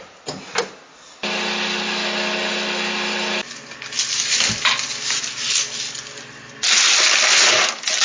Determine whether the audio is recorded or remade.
recorded